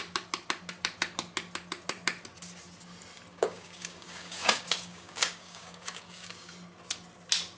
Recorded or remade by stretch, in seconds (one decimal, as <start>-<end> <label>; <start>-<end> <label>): 0.0-3.3 recorded; 3.3-6.5 remade; 6.5-7.6 recorded